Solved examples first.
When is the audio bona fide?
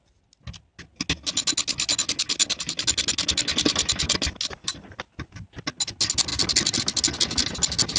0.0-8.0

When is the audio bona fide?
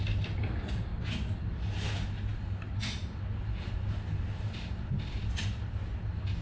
0.0-6.4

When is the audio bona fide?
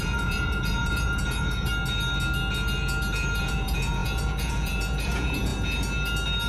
1.7-3.4; 5.5-6.5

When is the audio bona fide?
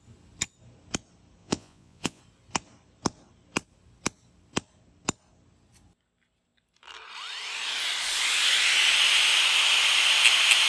0.0-1.4; 2.2-10.7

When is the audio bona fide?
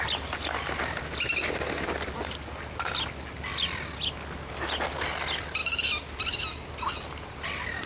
0.0-7.9